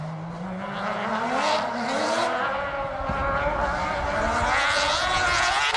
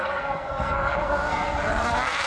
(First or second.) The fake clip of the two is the second